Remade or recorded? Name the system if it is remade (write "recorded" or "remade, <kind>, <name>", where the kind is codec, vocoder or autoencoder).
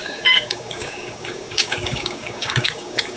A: remade, codec, DAC